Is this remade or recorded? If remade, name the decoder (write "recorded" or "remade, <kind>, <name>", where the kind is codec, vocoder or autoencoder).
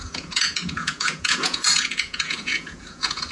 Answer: remade, vocoder, Vocos